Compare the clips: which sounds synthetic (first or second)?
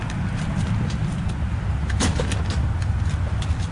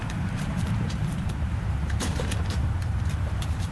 second